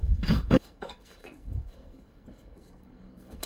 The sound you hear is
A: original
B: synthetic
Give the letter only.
B